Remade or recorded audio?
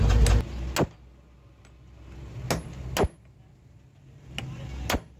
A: recorded